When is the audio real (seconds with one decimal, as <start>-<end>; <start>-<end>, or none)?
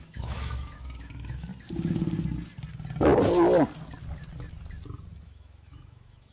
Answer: 1.5-5.2